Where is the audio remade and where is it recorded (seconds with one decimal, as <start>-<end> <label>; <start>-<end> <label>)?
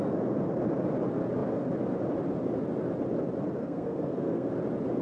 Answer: 0.0-3.6 recorded; 3.6-4.5 remade; 4.5-5.0 recorded